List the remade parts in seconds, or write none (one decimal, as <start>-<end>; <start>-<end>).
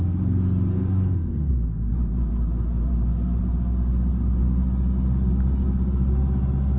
0.7-1.5